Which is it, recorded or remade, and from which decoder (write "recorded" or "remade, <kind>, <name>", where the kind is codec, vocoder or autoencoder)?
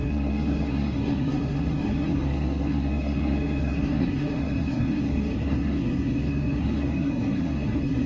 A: remade, codec, SNAC